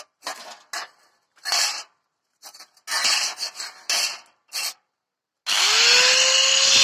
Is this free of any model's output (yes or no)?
yes